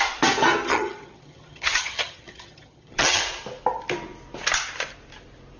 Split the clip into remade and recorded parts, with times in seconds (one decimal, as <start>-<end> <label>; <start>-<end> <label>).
0.0-0.7 recorded; 0.7-3.2 remade; 3.2-5.6 recorded